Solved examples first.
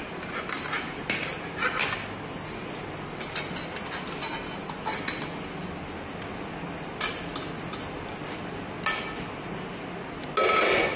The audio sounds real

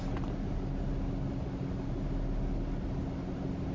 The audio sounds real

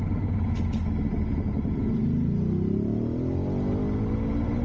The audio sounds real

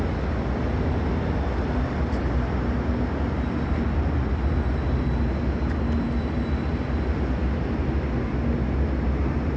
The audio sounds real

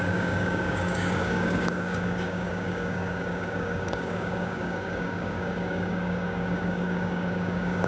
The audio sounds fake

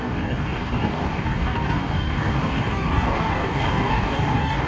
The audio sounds fake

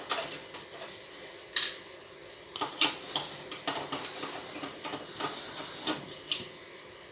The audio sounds real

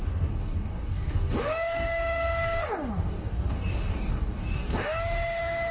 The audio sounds fake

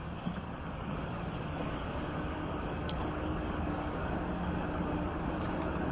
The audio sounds fake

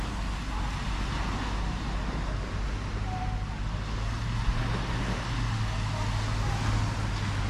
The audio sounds real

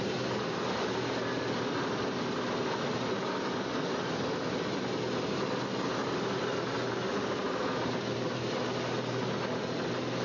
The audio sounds real